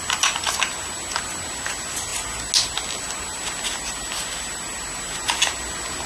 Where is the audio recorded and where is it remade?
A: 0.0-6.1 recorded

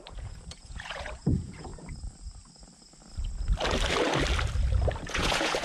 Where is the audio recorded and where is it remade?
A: 0.0-1.7 remade; 1.7-5.1 recorded; 5.1-5.6 remade

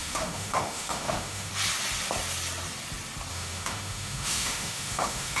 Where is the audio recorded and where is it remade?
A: 0.0-1.5 remade; 1.5-3.3 recorded; 3.3-5.4 remade

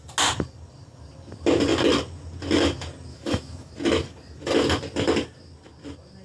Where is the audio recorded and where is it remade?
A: 0.0-3.1 recorded; 3.1-3.7 remade; 3.7-6.2 recorded

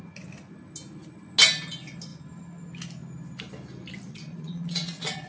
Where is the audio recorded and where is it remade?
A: 0.0-4.1 recorded; 4.1-5.3 remade

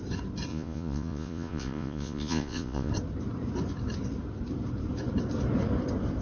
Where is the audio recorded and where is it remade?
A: 0.0-0.5 recorded; 0.5-2.9 remade; 2.9-6.2 recorded

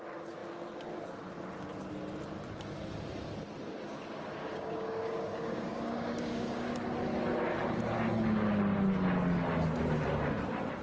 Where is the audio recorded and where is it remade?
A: 0.0-4.4 recorded; 4.4-6.7 remade; 6.7-10.8 recorded